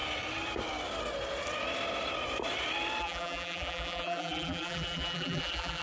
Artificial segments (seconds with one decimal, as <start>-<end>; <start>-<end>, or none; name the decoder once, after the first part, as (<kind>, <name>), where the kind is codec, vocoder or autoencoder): 3.0-5.8 (vocoder, BigVGAN v2)